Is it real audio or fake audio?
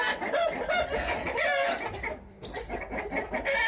real